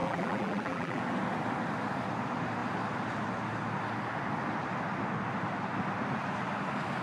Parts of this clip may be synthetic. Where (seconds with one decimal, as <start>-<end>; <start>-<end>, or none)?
0.0-1.0